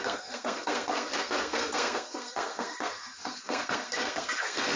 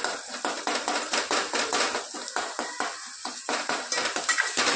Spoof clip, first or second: first